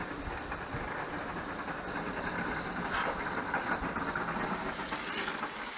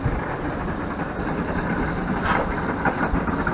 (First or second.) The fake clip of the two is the second